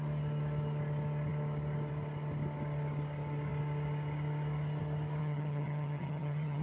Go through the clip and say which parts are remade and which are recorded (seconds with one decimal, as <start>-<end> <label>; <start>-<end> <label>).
0.0-5.2 recorded; 5.2-6.6 remade